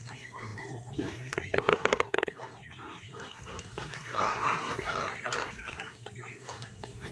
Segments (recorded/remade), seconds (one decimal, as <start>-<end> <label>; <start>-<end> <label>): 0.0-7.1 remade